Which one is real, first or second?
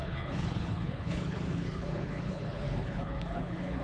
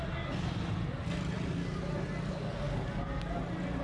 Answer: second